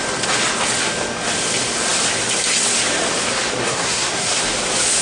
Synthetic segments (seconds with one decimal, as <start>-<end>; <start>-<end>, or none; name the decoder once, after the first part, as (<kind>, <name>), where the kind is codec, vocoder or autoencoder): 3.6-4.4 (codec, SNAC)